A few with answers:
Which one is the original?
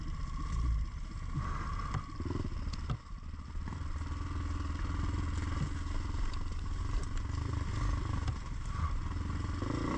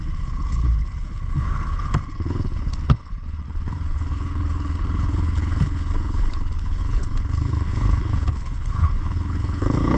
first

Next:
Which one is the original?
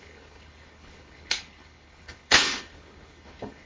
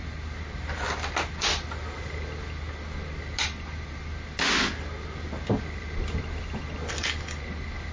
second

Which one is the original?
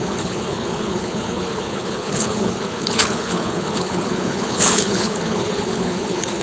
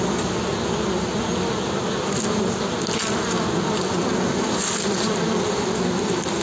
second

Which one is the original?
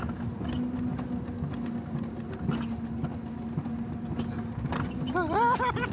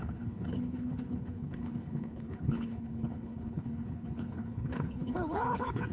first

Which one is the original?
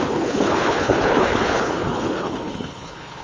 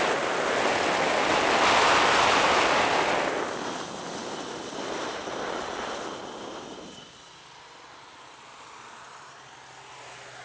second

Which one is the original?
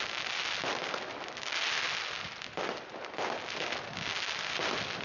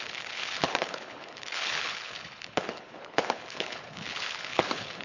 first